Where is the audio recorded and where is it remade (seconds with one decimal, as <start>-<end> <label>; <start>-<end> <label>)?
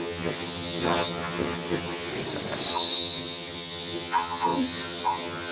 0.0-2.1 remade; 2.1-2.7 recorded; 2.7-5.5 remade